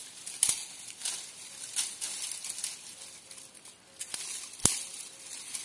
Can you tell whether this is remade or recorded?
recorded